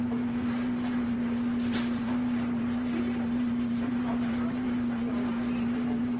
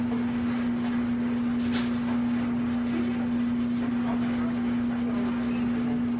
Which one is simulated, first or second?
first